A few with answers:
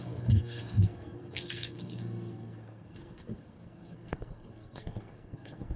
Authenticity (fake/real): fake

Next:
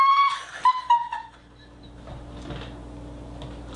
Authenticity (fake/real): real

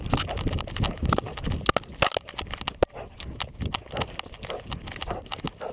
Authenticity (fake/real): real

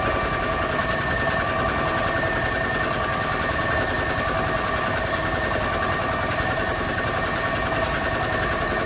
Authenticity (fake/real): real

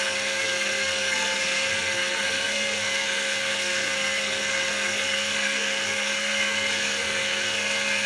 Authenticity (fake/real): fake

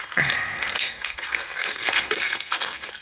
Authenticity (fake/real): fake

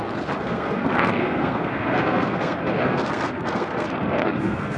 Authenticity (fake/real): fake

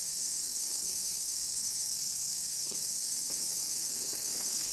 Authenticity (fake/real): fake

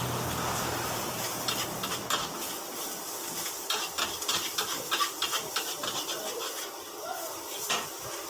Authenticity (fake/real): real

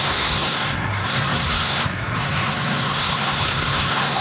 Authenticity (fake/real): fake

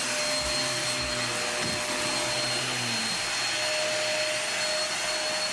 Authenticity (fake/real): real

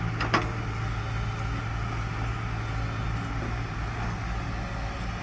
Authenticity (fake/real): real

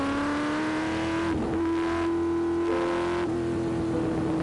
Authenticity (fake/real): real